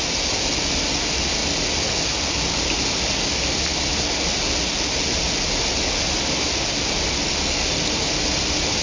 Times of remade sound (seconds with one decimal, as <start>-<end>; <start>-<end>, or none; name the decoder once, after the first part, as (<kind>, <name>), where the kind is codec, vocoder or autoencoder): none